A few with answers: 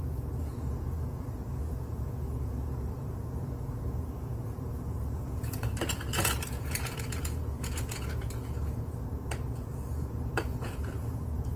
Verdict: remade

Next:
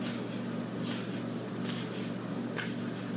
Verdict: recorded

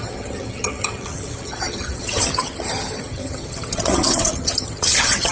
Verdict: remade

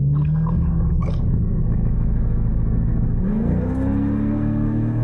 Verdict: remade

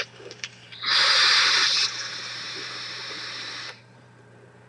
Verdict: remade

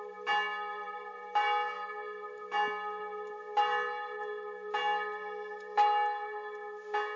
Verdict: recorded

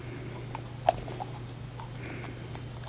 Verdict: recorded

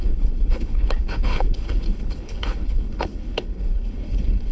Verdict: remade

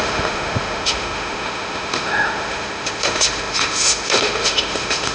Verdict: remade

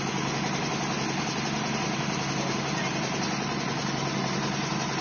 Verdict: recorded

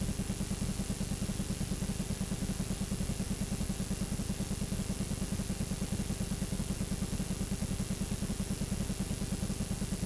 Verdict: recorded